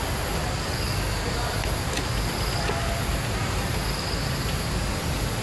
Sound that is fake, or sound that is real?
real